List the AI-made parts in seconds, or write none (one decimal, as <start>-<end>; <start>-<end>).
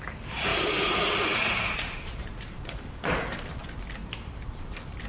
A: 0.5-3.6; 4.0-5.1